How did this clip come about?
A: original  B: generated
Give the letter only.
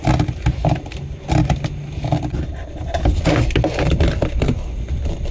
A